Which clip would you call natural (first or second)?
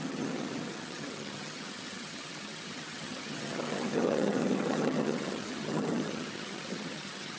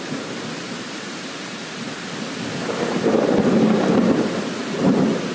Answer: second